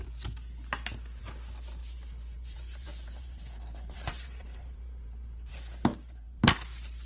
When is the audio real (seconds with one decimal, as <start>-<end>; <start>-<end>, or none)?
0.0-1.8; 5.5-5.9; 6.4-7.1